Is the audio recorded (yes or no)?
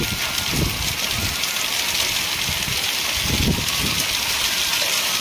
yes